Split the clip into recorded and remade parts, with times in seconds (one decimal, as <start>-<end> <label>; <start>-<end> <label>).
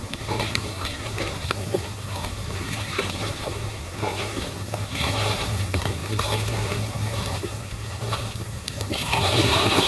0.0-9.9 remade